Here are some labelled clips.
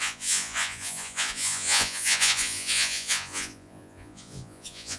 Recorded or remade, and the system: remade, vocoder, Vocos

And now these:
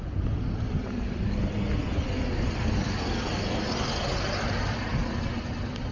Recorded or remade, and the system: recorded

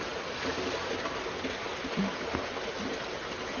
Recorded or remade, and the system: recorded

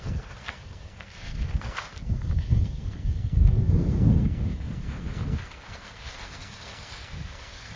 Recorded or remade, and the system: remade, codec, SNAC